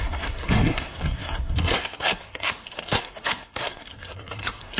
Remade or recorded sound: remade